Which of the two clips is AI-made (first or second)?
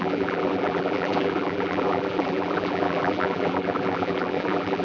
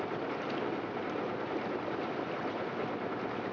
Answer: first